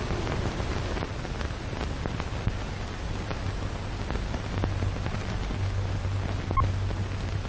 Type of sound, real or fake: real